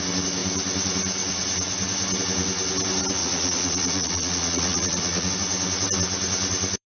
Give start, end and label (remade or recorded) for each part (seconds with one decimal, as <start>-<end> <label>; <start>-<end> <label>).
0.0-3.2 recorded; 3.2-5.3 remade; 5.3-6.9 recorded